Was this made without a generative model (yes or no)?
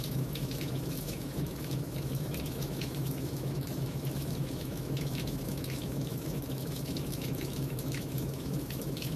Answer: no